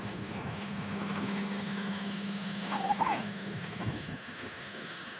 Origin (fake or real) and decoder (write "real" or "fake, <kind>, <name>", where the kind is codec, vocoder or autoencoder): fake, autoencoder, DAC-VAE